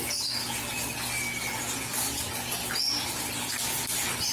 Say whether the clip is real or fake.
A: real